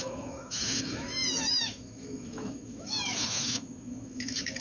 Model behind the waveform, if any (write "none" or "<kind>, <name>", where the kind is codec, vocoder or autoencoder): autoencoder, DAC-VAE